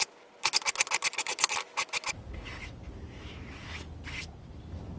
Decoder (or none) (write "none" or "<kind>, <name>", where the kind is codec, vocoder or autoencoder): none